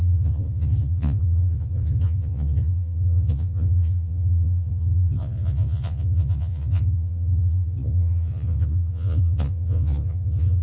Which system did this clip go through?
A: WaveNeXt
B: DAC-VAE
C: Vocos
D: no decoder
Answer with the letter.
C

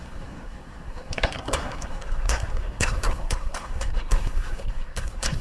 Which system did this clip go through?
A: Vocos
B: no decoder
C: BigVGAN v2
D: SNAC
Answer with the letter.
D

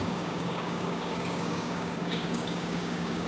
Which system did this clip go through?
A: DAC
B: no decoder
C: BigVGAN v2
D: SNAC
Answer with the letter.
A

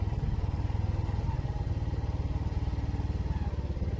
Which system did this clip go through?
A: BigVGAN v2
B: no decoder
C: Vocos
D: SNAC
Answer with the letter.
B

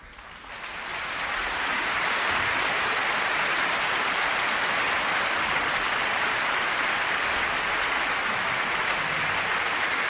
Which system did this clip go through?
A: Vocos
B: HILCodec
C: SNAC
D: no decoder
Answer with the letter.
D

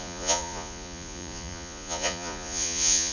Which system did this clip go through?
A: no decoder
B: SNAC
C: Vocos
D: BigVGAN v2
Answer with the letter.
C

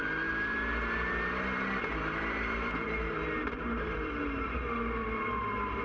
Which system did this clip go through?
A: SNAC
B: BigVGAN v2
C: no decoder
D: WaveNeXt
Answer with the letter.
B